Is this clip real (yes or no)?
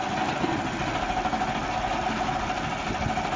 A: yes